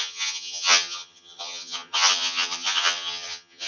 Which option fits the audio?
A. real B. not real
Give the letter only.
B